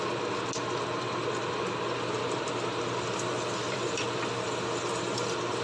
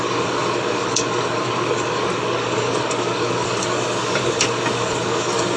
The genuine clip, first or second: first